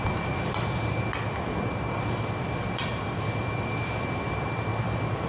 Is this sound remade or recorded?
remade